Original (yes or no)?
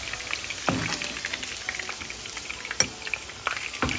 yes